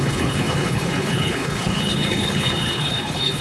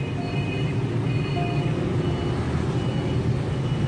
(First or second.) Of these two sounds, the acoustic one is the second